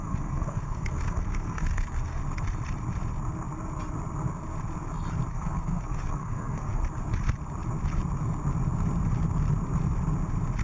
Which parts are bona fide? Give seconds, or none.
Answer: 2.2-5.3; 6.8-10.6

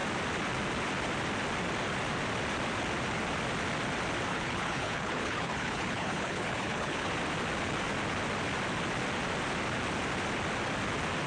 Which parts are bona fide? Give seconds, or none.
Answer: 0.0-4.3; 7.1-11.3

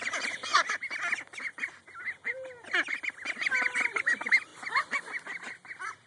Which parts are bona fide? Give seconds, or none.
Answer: 0.0-6.1